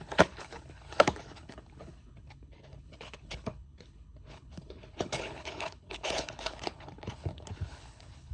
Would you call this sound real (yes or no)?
no